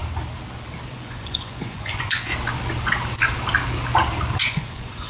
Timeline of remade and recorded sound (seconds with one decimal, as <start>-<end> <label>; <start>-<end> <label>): 0.0-0.9 recorded; 0.9-2.3 remade; 2.3-4.4 recorded; 4.4-5.1 remade